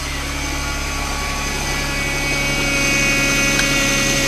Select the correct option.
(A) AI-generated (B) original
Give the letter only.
B